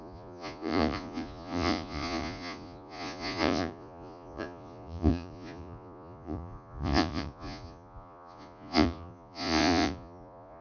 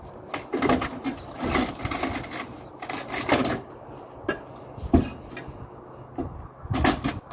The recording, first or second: second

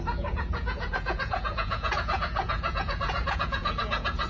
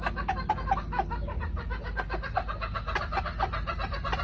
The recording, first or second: second